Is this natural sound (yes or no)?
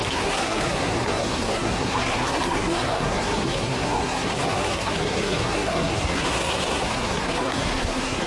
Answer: no